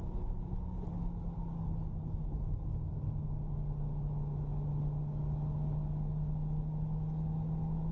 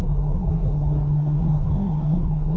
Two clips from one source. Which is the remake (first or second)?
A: second